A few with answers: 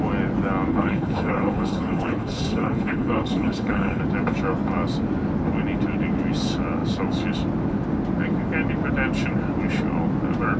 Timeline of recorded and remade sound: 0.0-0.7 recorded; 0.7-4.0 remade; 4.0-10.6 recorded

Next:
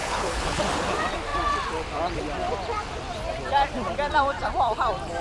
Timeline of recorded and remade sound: 0.0-0.6 remade; 0.6-5.2 recorded

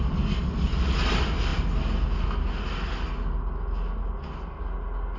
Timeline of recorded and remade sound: 0.0-5.2 recorded

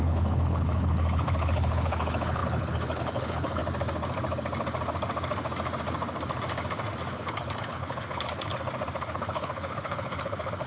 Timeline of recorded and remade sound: 0.0-3.6 remade; 3.6-7.1 recorded; 7.1-8.5 remade; 8.5-9.1 recorded; 9.1-10.7 remade

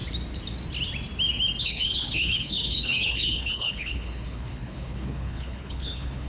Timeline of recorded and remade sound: 0.0-1.6 recorded; 1.6-6.3 remade

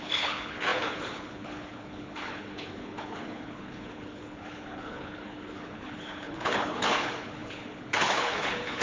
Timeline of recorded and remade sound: 0.0-8.8 remade

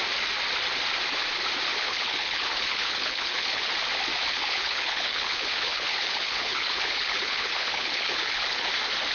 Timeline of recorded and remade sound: 0.0-1.7 recorded; 1.7-3.7 remade; 3.7-4.3 recorded; 4.3-8.7 remade; 8.7-9.1 recorded

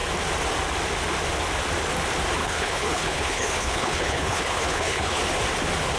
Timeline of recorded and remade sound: 0.0-2.4 recorded; 2.4-5.2 remade; 5.2-6.0 recorded